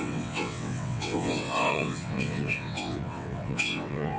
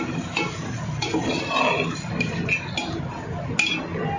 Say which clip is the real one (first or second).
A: second